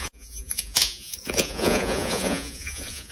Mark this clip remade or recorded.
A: remade